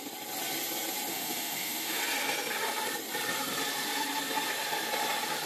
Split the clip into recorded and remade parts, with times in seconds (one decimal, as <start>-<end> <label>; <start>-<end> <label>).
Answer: 0.0-1.1 recorded; 1.1-2.0 remade; 2.0-5.5 recorded